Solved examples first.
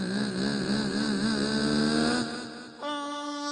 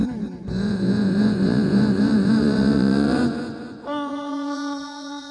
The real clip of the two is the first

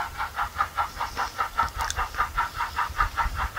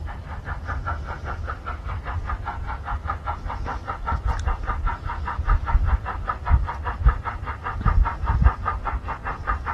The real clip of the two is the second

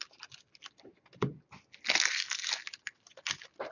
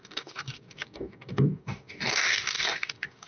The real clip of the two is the first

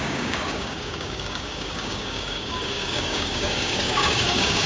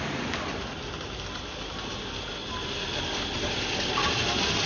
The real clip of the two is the second